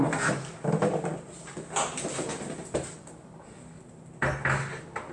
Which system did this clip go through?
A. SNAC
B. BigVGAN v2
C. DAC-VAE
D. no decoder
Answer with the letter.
D